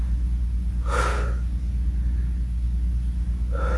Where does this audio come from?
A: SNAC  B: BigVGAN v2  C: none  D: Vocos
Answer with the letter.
C